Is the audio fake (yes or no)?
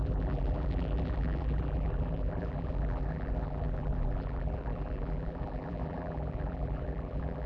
yes